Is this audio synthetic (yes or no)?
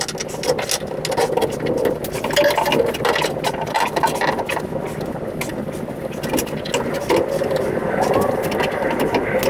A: no